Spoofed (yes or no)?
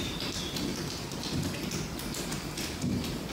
no